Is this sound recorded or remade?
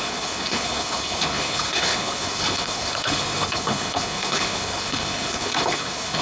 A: remade